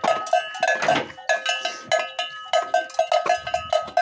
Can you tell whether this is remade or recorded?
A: recorded